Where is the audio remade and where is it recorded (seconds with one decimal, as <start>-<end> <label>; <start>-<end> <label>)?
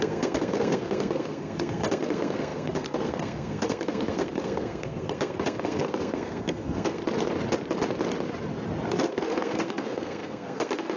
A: 0.0-7.0 remade; 7.0-8.9 recorded; 8.9-11.0 remade